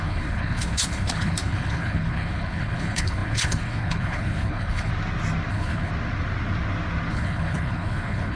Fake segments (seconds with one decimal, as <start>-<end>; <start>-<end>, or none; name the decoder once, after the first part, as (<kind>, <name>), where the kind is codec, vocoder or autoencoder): 0.0-4.9 (codec, HILCodec); 5.5-5.9; 7.1-8.4